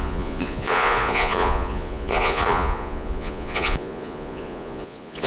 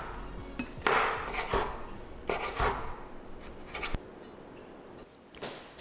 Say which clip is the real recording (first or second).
second